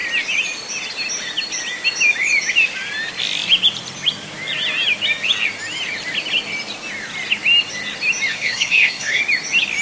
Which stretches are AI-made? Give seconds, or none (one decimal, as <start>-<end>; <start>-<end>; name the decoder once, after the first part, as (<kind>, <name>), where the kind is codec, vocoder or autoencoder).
8.3-9.2 (codec, SNAC)